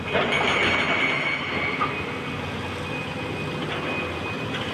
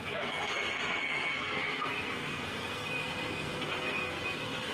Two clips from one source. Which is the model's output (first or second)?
second